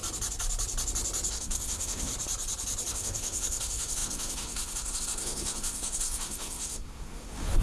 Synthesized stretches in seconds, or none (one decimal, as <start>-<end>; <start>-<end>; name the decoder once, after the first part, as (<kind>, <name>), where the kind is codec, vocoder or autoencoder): 1.3-2.1 (codec, SNAC); 2.9-7.6